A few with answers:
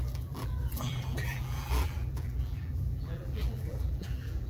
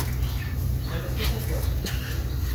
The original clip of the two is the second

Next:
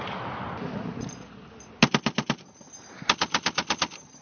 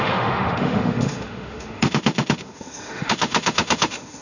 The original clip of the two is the first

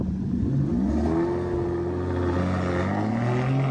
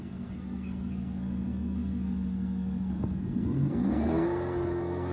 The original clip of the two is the first